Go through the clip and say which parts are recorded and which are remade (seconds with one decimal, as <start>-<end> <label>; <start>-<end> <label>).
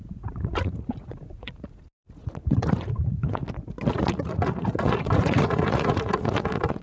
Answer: 0.0-3.4 remade; 3.4-3.9 recorded; 3.9-6.8 remade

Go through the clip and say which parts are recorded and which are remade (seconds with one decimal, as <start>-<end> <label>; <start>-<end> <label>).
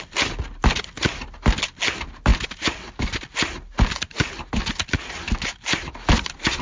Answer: 0.0-6.6 recorded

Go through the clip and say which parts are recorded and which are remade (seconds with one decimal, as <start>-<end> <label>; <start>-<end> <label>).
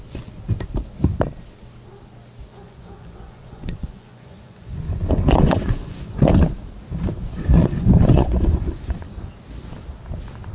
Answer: 0.0-2.5 recorded; 2.5-6.2 remade; 6.2-7.3 recorded; 7.3-9.3 remade; 9.3-10.5 recorded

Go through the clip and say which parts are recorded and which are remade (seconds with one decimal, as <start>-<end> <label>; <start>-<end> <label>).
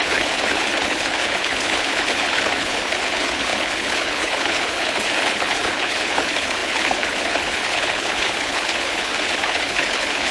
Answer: 0.0-10.3 remade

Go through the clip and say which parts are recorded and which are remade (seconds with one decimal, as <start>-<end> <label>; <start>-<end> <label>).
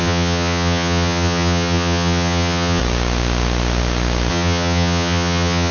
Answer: 0.0-2.8 remade; 2.8-4.3 recorded; 4.3-5.7 remade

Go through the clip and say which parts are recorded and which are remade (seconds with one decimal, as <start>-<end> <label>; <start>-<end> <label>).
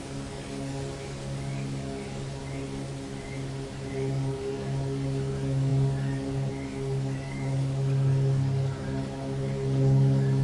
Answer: 0.0-2.4 remade; 2.4-3.9 recorded; 3.9-10.4 remade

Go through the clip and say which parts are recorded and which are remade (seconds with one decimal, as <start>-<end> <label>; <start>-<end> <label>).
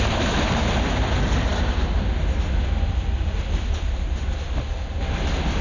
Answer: 0.0-5.6 remade